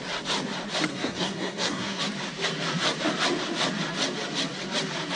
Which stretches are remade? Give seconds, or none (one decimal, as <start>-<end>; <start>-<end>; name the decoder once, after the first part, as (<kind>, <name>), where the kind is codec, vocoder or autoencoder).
0.9-2.0 (codec, SNAC)